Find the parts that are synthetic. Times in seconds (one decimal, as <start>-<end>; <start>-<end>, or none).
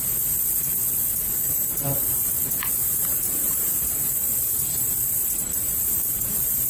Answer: 2.8-3.7